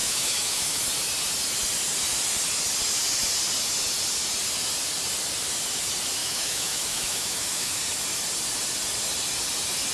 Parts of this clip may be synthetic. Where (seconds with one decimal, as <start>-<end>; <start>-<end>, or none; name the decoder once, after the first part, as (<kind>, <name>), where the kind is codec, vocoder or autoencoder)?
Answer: 0.0-0.8 (autoencoder, DAC-VAE); 6.2-7.8